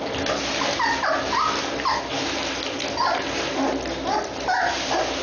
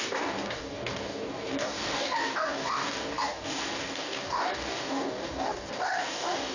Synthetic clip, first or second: second